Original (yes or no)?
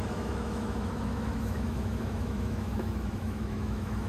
no